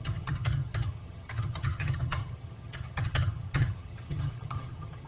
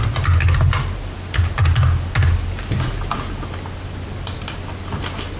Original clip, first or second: second